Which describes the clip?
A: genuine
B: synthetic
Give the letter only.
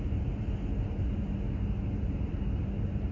A